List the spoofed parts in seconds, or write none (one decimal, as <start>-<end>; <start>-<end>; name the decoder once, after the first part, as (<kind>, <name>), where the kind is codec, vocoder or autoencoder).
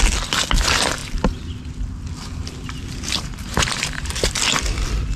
2.4-4.1 (vocoder, BigVGAN v2)